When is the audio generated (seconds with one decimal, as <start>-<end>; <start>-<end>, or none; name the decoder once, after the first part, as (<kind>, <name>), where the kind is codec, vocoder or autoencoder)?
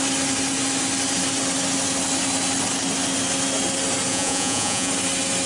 4.1-4.9 (vocoder, Vocos)